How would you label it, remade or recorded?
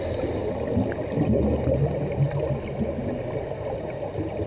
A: recorded